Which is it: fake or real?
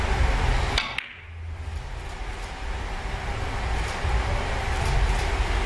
real